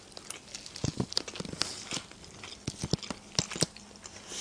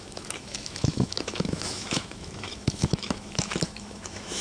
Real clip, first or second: first